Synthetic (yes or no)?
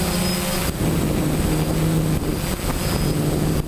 no